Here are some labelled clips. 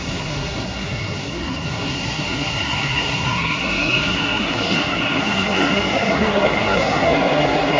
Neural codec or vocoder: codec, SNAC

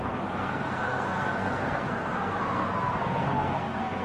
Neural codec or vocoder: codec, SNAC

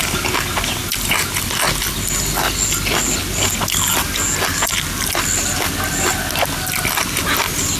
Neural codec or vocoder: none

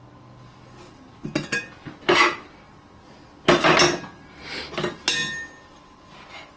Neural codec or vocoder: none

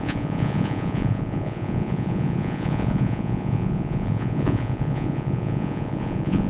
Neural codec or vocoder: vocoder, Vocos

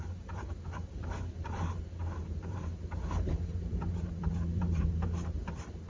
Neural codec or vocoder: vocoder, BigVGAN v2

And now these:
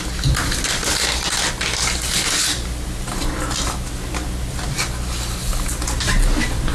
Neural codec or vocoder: none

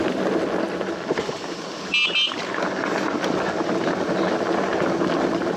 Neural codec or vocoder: none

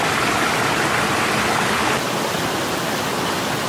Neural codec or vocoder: none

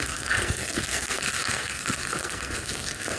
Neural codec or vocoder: codec, SNAC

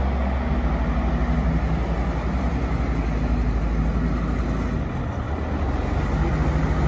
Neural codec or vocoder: none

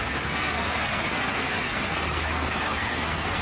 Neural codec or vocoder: codec, SNAC